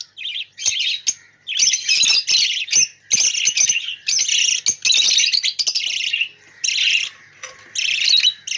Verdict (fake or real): real